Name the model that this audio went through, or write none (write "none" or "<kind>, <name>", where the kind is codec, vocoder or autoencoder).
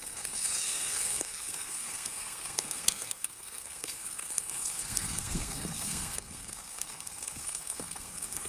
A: codec, SNAC